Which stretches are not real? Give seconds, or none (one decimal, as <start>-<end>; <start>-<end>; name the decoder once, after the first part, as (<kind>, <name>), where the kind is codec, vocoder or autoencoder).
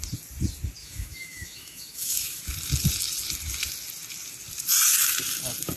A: 0.8-2.4 (autoencoder, DAC-VAE)